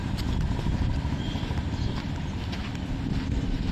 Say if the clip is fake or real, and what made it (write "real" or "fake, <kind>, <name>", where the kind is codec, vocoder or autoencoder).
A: real